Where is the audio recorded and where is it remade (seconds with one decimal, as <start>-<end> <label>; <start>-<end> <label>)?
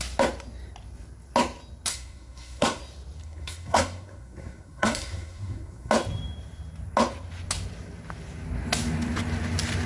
0.0-1.9 recorded; 1.9-2.8 remade; 2.8-3.2 recorded; 3.2-5.9 remade; 5.9-9.9 recorded